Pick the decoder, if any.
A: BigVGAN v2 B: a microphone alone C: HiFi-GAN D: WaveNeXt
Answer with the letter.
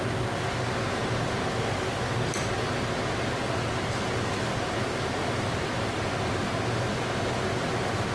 B